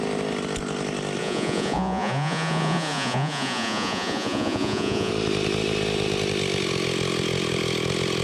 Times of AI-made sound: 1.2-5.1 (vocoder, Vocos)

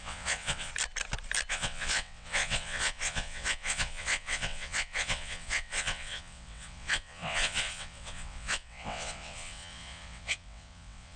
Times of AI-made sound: 0.0-0.7 (vocoder, WaveNeXt); 1.5-11.2

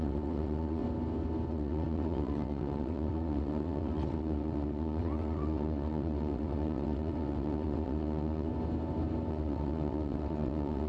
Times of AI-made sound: 0.0-0.8 (vocoder, WaveNeXt); 1.5-8.5; 9.3-10.9

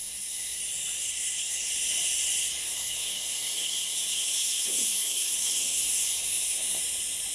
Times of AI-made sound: 0.0-0.6 (codec, SNAC); 1.0-1.7; 2.6-6.8

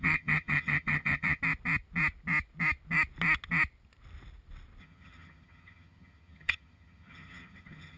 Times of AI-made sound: 0.0-1.4 (vocoder, HiFi-GAN); 4.8-8.0

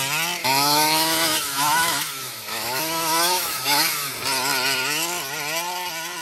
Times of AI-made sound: 0.4-4.1 (autoencoder, DAC-VAE)

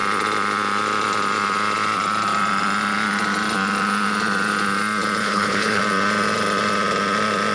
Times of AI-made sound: 5.2-5.8 (codec, HILCodec)

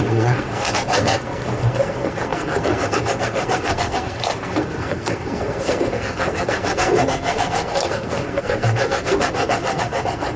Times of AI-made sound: 0.0-10.4 (codec, SNAC)